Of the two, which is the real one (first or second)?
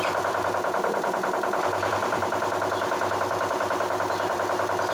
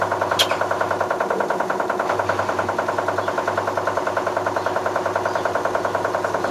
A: second